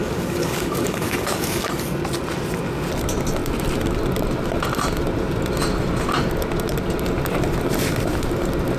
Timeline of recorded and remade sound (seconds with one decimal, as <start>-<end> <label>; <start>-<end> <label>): 0.0-1.7 remade; 1.7-8.8 recorded